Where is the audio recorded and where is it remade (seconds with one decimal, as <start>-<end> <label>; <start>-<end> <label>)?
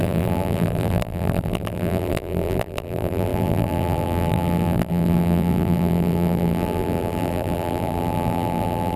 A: 0.0-9.0 remade